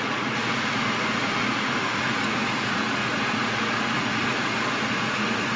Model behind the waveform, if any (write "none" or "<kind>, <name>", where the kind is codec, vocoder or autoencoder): vocoder, Vocos